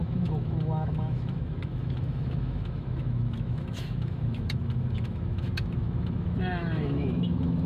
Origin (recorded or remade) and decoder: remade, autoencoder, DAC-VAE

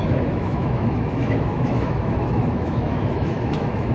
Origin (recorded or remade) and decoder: remade, autoencoder, DAC-VAE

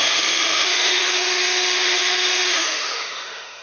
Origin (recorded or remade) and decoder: remade, autoencoder, DAC-VAE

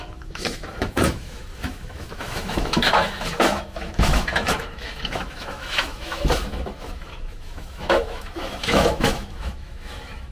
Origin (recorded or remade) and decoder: remade, autoencoder, DAC-VAE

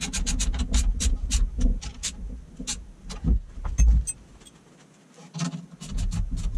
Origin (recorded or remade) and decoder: recorded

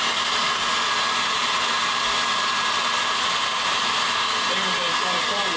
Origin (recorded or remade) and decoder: recorded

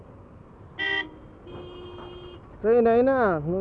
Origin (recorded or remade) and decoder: recorded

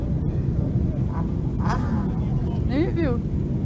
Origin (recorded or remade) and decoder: recorded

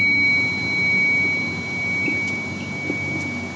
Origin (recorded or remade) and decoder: recorded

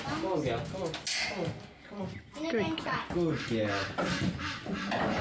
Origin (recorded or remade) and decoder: recorded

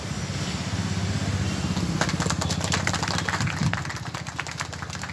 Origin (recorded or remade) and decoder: recorded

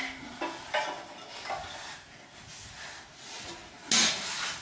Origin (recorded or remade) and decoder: recorded